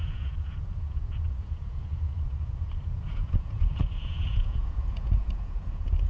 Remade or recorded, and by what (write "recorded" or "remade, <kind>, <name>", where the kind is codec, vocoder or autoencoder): remade, vocoder, Vocos